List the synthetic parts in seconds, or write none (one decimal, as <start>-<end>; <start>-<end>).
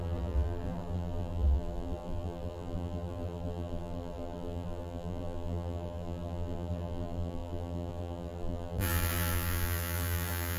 0.0-10.6